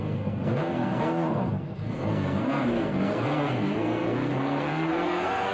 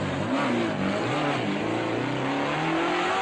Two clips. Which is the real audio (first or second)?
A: second